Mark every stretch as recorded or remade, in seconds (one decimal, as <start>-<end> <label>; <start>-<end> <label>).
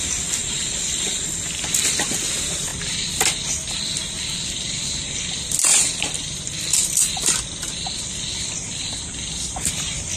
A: 0.0-5.7 recorded; 5.7-9.7 remade; 9.7-10.2 recorded